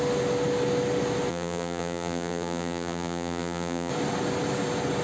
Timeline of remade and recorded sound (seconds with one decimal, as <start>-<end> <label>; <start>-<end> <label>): 0.0-1.3 recorded; 1.3-3.9 remade; 3.9-5.0 recorded

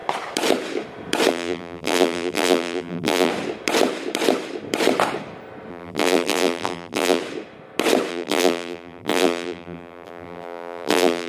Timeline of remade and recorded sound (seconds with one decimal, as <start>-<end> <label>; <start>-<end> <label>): 0.0-1.3 recorded; 1.3-3.3 remade; 3.3-5.7 recorded; 5.7-7.2 remade; 7.2-8.1 recorded; 8.1-11.3 remade

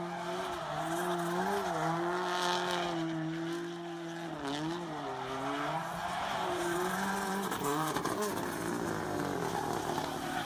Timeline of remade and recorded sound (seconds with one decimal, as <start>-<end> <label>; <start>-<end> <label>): 0.0-6.0 recorded; 6.0-8.6 remade; 8.6-10.4 recorded

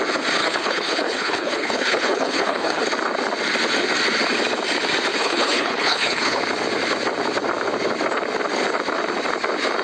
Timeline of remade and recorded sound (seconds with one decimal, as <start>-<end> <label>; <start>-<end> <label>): 0.0-0.4 recorded; 0.4-2.8 remade; 2.8-5.1 recorded; 5.1-6.4 remade; 6.4-9.8 recorded

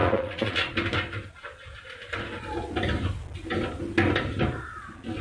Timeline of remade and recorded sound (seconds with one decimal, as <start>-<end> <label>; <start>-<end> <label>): 0.0-0.7 remade; 0.7-5.2 recorded

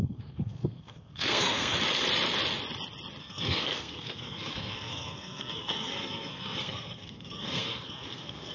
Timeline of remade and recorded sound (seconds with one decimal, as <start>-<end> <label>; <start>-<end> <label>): 0.0-1.7 remade; 1.7-3.2 recorded; 3.2-8.5 remade